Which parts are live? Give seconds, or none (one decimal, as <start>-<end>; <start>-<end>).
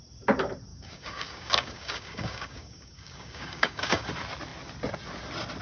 0.0-0.7; 4.1-5.6